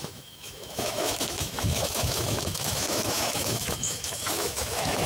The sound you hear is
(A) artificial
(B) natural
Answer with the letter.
A